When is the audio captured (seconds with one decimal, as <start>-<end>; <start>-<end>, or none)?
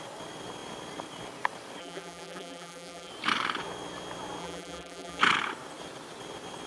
0.0-1.8; 3.1-4.4; 5.2-6.7